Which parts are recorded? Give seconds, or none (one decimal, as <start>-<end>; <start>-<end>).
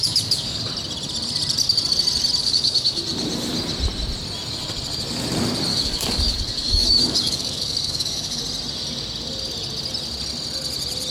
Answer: 0.6-2.4; 3.0-5.7; 8.4-11.1